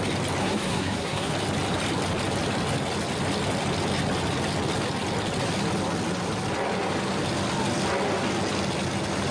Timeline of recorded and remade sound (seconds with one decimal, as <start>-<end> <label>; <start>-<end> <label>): 0.0-0.4 recorded; 0.4-1.3 remade; 1.3-9.3 recorded